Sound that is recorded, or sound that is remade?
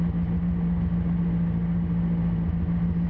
recorded